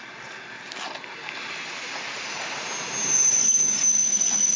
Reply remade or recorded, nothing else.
recorded